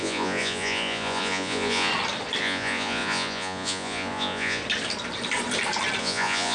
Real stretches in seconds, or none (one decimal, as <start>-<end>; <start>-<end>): 1.9-2.4; 4.6-6.0